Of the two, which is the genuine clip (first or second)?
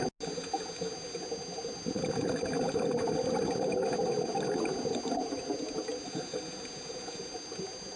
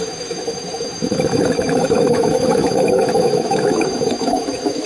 first